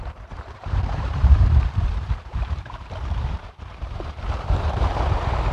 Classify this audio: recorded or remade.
remade